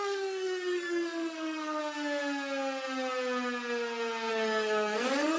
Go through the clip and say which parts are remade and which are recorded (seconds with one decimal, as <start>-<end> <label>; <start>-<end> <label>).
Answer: 0.0-1.8 remade; 1.8-4.3 recorded; 4.3-5.4 remade